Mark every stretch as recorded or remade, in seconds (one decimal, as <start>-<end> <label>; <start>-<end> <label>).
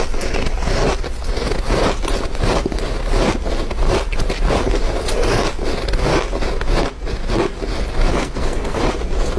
0.0-8.1 recorded; 8.1-8.8 remade; 8.8-9.4 recorded